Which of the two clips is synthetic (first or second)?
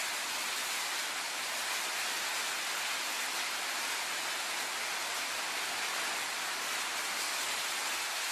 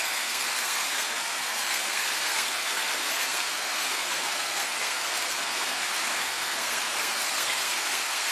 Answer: second